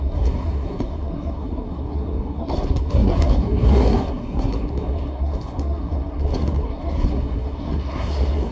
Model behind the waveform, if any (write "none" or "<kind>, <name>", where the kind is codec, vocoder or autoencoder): codec, SNAC